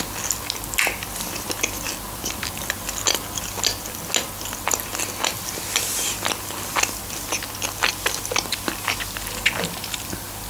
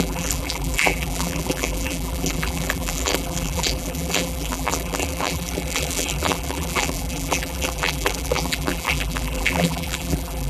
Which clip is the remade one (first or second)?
second